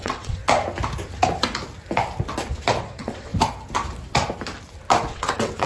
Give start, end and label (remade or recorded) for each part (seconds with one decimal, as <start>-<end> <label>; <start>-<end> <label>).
0.0-0.4 remade; 0.4-2.8 recorded; 2.8-3.3 remade; 3.3-5.1 recorded; 5.1-5.7 remade